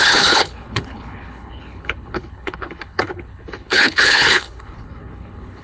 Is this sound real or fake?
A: fake